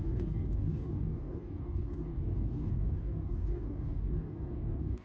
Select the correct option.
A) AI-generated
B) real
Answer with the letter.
A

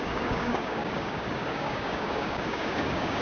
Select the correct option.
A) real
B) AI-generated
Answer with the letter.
B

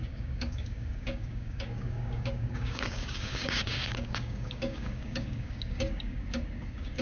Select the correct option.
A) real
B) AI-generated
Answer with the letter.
B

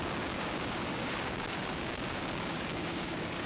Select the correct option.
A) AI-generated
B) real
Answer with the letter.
A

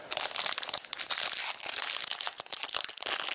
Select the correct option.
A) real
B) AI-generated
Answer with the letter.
A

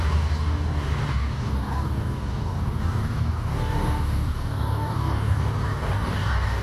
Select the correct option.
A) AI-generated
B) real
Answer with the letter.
A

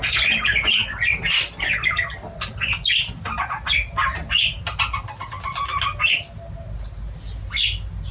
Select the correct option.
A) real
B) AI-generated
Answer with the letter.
A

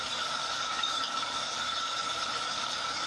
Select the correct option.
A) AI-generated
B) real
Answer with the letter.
A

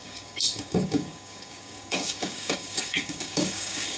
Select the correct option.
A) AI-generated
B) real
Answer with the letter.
A